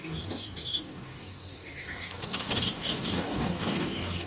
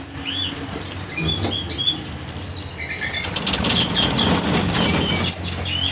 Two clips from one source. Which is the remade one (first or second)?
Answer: first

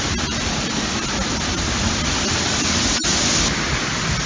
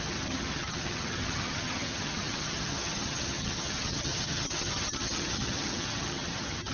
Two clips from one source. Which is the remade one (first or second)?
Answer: second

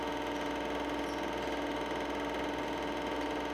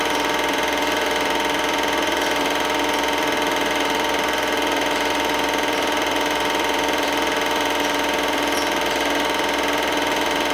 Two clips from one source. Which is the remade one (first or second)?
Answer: second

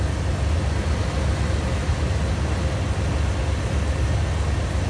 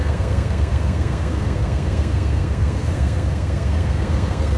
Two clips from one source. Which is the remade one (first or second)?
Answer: second